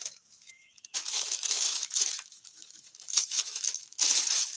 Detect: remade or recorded remade